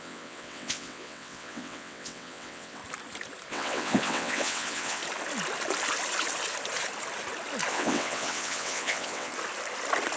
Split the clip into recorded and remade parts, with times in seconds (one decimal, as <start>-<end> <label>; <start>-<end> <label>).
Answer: 0.0-2.8 remade; 2.8-3.5 recorded; 3.5-5.0 remade; 5.0-7.7 recorded; 7.7-9.3 remade; 9.3-10.2 recorded